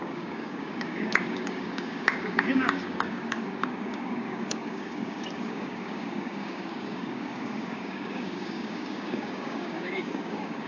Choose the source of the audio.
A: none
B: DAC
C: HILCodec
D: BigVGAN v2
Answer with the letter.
B